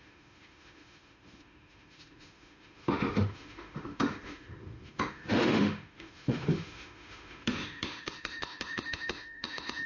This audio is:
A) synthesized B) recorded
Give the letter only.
A